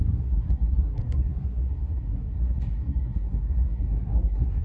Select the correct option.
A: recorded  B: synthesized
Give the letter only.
B